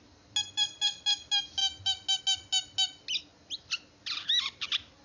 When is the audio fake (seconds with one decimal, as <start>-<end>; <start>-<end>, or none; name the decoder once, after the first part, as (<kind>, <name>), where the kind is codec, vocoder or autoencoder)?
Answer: none